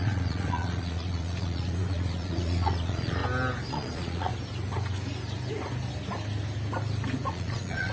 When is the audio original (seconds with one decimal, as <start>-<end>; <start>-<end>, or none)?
3.2-3.7; 4.3-7.3